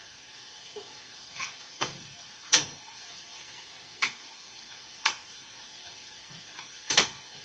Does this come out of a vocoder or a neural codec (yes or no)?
yes